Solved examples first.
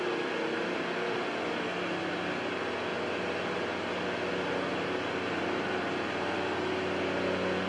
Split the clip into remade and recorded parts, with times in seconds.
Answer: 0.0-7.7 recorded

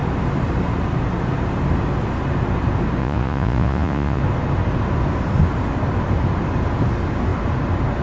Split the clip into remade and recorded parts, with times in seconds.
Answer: 0.0-3.0 recorded; 3.0-4.2 remade; 4.2-8.0 recorded